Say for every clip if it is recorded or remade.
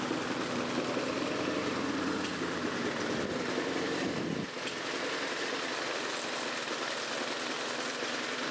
recorded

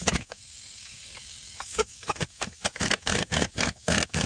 remade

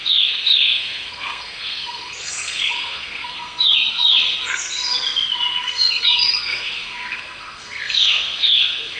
remade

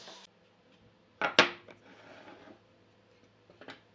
recorded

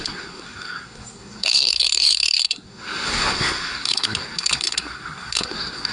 remade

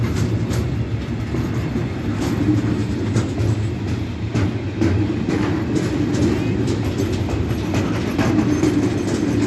recorded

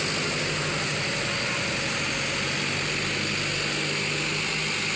recorded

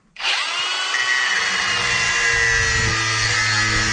recorded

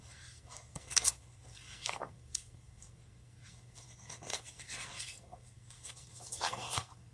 remade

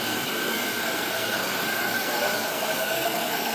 remade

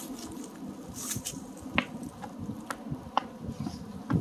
recorded